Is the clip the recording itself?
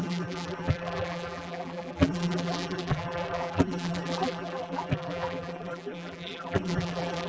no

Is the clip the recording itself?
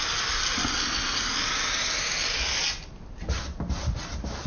yes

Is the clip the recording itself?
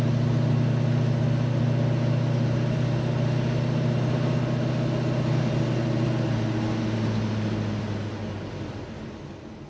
yes